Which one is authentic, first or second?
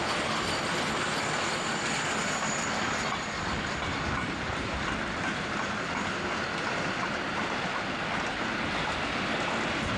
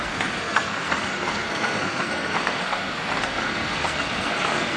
first